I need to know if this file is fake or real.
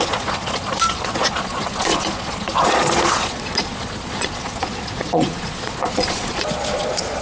fake